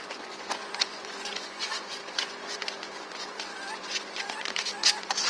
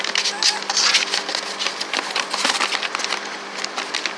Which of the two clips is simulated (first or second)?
first